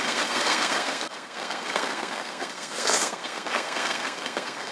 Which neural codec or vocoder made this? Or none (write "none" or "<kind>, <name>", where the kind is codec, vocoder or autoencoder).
codec, SNAC